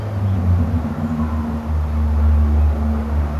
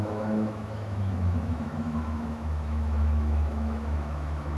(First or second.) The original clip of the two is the first